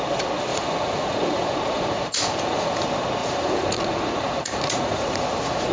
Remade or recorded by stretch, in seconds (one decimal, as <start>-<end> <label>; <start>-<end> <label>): 0.0-0.5 recorded; 0.5-2.8 remade; 2.8-3.2 recorded; 3.2-5.7 remade